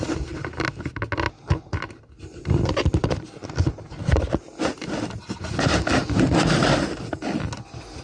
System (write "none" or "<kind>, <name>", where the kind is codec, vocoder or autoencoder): none